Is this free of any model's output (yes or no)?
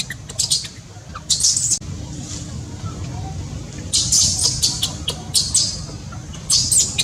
yes